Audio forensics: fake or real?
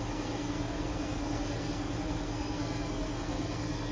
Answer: fake